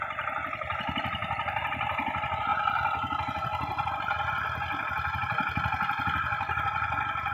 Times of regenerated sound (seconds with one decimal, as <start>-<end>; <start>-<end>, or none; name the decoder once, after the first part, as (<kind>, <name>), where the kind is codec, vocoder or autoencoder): none